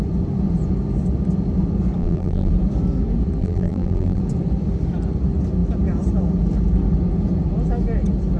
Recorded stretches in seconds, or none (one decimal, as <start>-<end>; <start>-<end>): 0.0-2.0; 2.5-3.4; 4.2-8.4